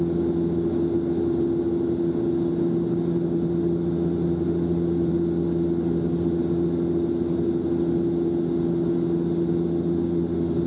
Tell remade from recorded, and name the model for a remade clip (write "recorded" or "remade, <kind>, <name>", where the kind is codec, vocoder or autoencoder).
recorded